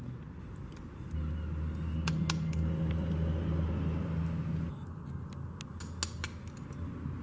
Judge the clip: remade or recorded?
recorded